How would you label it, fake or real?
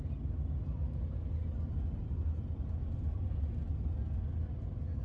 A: real